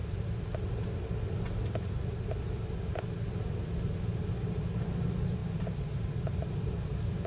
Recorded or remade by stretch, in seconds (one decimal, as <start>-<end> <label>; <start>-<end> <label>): 0.0-4.3 recorded; 4.3-7.3 remade